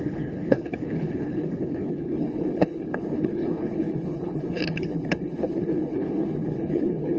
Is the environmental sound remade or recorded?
remade